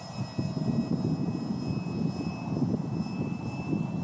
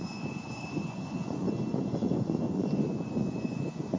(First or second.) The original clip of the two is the first